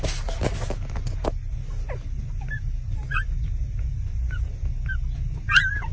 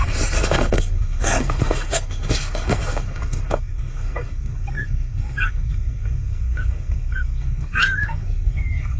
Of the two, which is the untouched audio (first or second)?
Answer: first